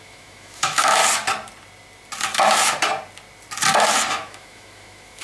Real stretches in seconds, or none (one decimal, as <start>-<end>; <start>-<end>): 1.0-4.1